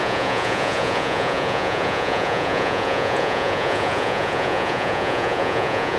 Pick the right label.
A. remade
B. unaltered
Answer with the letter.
A